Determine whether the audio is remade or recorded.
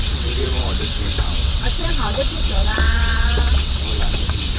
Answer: remade